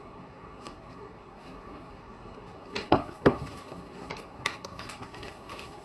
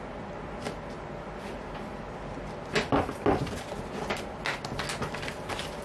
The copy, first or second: first